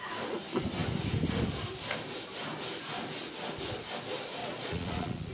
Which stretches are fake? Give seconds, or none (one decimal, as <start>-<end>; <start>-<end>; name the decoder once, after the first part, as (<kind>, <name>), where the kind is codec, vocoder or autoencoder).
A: 4.4-5.3 (vocoder, Vocos)